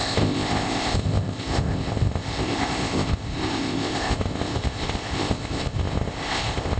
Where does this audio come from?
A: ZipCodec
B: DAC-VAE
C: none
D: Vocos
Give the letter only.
A